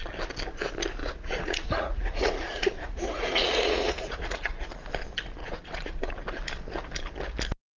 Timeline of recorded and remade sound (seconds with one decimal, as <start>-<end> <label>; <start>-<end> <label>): 0.0-1.0 recorded; 1.0-4.7 remade; 4.7-5.4 recorded; 5.4-6.1 remade; 6.1-7.8 recorded